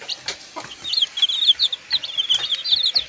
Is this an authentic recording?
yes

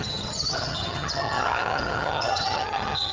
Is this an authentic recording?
no